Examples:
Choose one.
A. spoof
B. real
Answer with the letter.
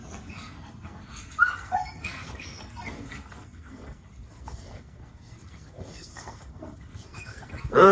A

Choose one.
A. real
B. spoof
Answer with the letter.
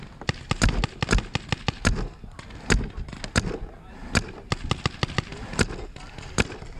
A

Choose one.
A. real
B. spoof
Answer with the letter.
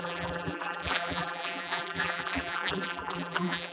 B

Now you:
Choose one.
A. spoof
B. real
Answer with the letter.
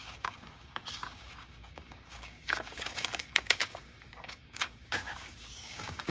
A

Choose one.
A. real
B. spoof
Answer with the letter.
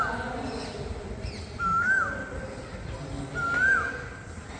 A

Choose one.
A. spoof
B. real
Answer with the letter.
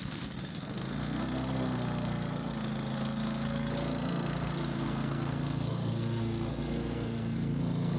A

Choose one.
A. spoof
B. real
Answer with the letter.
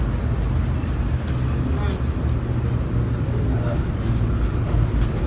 B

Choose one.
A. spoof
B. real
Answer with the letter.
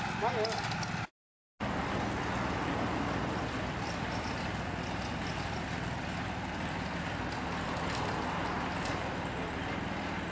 B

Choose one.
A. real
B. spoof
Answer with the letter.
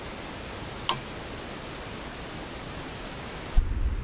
A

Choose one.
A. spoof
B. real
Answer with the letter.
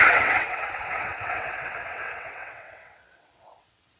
A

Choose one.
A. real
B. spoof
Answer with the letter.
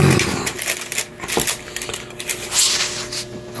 A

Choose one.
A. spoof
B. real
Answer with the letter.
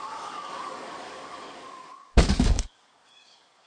A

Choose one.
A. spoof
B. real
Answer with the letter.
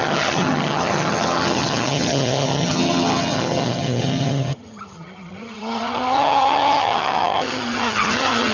A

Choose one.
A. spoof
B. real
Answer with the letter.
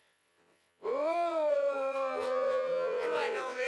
A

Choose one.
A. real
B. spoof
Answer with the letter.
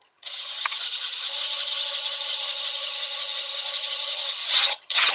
B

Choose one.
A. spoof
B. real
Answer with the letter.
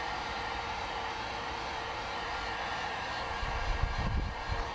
A